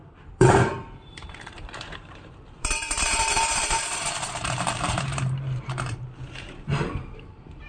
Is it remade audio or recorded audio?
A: remade